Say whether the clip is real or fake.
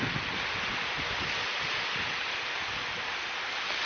real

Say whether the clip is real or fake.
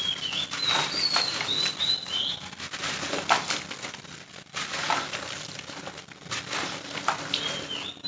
real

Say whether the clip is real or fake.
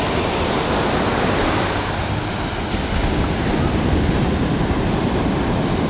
real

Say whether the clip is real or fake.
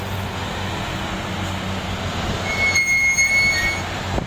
real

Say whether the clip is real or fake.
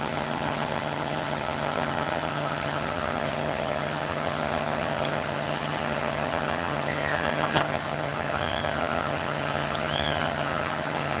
fake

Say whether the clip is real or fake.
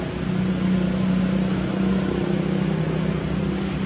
real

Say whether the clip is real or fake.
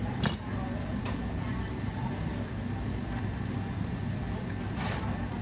real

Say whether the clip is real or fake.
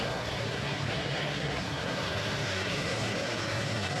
fake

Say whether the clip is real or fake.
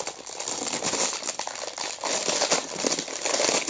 real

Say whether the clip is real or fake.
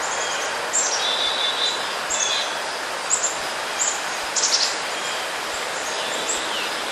real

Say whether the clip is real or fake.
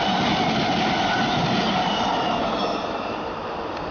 real